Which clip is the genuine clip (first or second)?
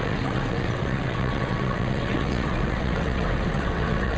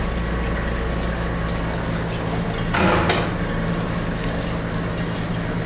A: second